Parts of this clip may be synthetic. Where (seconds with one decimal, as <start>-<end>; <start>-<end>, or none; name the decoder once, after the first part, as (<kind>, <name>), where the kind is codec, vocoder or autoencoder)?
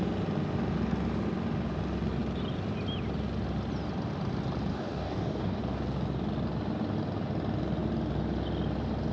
4.7-5.6 (codec, DAC)